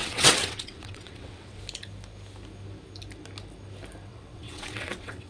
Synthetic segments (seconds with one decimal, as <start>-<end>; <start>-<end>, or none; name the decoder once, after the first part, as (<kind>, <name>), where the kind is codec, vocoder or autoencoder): 0.0-1.6 (vocoder, WaveNeXt); 4.1-5.3